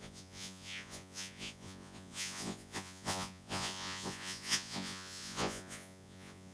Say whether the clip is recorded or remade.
remade